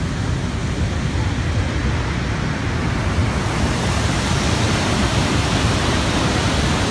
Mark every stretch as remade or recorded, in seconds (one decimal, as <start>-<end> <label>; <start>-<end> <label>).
0.0-6.9 recorded